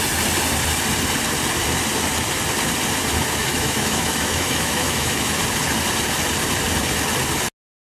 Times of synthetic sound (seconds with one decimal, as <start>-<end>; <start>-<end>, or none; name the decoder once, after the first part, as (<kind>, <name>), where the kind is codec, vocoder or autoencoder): 3.4-5.4 (autoencoder, DAC-VAE)